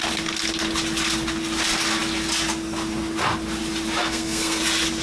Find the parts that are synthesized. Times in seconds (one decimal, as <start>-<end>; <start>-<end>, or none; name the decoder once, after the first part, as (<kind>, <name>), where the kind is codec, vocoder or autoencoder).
4.0-4.6 (codec, SNAC)